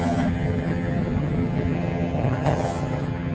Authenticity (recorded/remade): remade